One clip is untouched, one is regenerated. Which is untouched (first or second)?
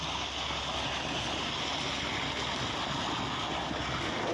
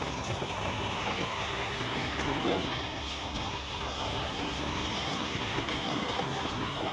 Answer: first